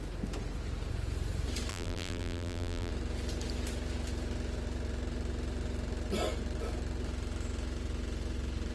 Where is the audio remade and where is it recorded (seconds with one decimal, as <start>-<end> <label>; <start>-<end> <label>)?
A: 0.0-1.7 recorded; 1.7-2.9 remade; 2.9-8.7 recorded